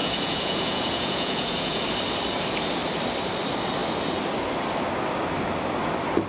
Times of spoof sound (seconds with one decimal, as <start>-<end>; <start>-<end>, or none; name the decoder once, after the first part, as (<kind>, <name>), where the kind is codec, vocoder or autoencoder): 0.0-1.8 (vocoder, Vocos)